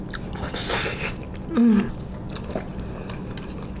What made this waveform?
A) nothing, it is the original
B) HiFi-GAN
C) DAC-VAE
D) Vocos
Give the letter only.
A